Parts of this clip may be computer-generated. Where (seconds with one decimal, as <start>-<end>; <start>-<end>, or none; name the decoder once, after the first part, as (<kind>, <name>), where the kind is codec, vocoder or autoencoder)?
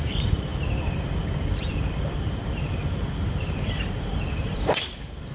0.0-5.3 (vocoder, BigVGAN v2)